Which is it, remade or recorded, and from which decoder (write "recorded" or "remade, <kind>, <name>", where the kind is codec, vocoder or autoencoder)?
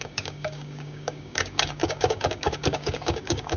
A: remade, codec, DAC